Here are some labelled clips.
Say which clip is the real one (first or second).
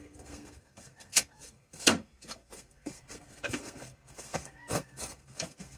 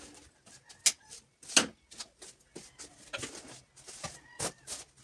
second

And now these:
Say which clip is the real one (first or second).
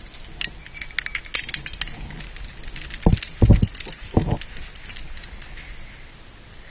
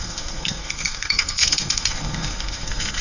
first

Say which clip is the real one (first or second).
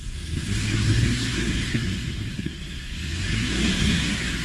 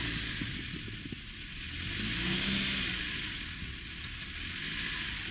second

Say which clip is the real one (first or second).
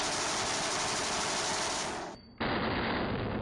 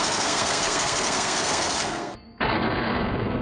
first